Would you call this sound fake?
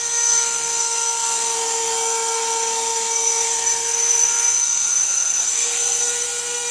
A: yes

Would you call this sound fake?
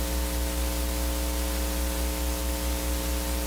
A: no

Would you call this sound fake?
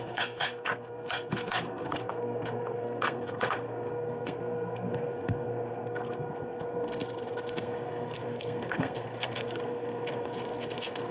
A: yes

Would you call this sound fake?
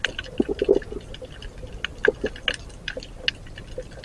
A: no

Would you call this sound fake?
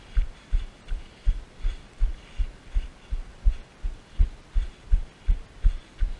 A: no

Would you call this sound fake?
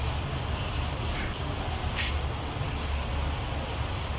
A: no